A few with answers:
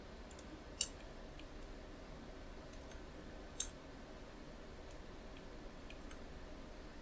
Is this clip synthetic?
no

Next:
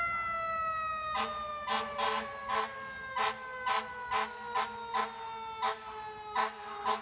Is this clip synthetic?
no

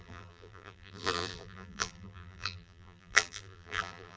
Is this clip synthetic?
yes